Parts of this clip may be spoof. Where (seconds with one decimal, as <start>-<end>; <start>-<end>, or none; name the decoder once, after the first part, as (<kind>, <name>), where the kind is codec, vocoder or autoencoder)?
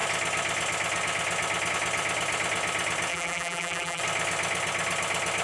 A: 3.1-4.0 (vocoder, BigVGAN v2)